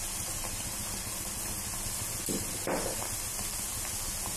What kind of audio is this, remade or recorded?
recorded